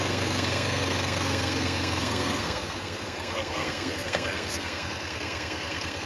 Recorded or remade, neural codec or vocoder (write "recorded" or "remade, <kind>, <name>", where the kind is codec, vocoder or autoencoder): remade, codec, SNAC